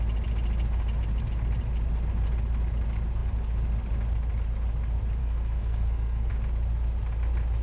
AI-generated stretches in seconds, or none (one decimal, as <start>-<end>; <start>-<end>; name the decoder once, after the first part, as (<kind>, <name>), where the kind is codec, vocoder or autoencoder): 5.2-6.3 (codec, SNAC)